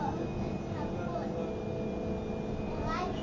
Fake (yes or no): no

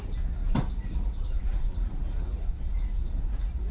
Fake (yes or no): yes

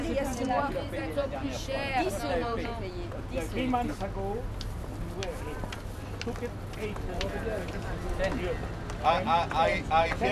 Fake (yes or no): no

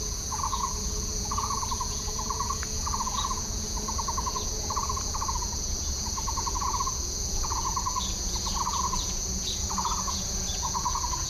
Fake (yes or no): yes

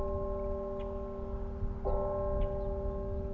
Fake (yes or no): no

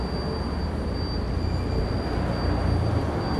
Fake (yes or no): no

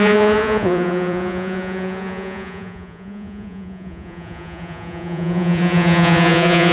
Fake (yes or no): yes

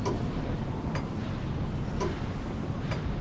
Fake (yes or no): no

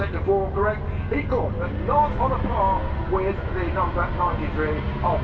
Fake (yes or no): no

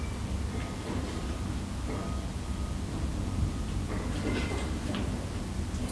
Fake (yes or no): no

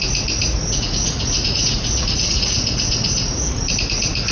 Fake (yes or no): yes